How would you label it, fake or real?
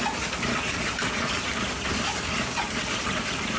real